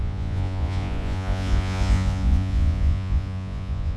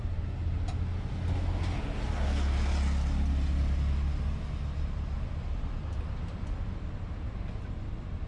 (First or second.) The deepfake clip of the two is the first